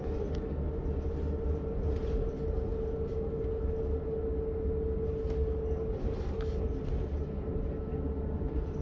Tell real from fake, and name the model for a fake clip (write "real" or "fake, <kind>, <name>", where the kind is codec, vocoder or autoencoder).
real